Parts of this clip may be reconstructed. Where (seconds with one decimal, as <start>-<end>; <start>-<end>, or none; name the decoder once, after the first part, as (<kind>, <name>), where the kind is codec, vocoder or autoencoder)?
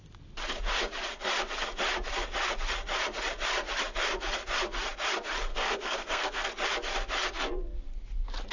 5.5-6.5 (codec, SNAC)